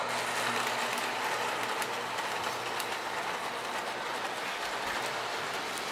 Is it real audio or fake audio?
real